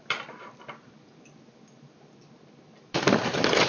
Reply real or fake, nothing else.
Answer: fake